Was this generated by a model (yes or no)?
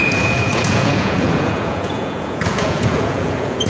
yes